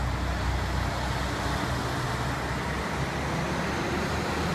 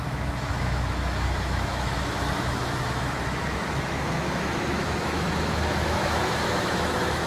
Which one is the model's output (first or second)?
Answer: second